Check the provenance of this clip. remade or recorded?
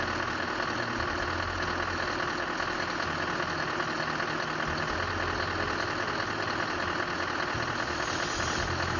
recorded